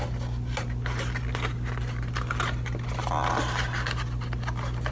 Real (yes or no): yes